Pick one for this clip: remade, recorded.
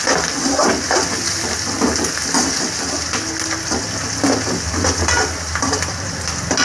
recorded